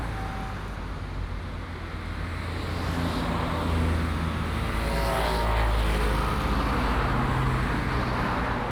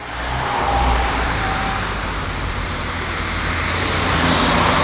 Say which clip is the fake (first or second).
second